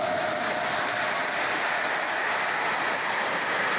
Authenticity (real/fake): real